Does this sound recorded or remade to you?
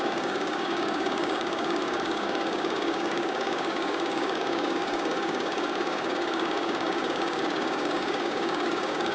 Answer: remade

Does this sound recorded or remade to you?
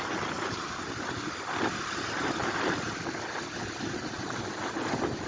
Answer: recorded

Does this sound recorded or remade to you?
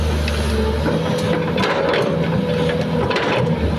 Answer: recorded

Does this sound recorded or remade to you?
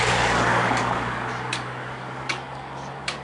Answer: remade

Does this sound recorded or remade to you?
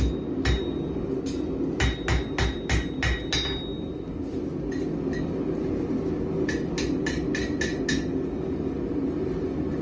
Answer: recorded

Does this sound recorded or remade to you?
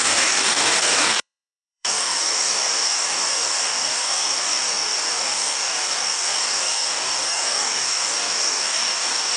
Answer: remade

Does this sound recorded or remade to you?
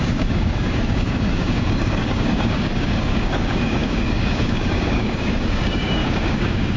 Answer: remade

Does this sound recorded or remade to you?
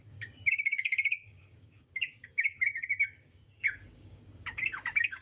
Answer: remade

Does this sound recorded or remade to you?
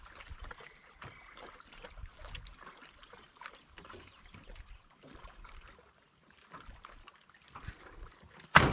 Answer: recorded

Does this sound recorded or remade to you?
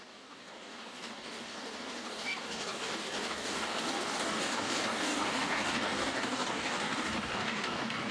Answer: remade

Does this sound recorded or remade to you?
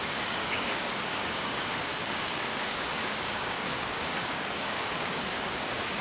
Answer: remade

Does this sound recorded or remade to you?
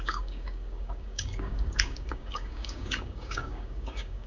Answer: remade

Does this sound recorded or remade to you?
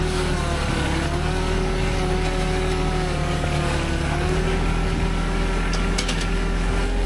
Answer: remade